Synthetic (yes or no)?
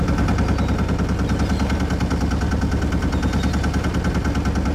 no